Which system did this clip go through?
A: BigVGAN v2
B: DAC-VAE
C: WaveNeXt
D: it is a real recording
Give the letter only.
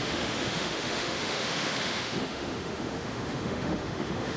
B